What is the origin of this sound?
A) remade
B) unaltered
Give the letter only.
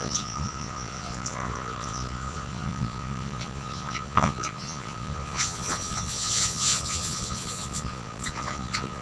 A